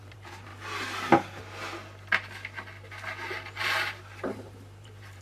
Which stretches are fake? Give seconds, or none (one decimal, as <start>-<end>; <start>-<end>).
0.0-0.5; 3.6-5.2